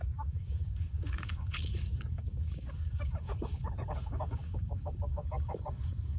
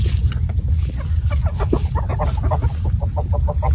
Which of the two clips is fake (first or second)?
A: first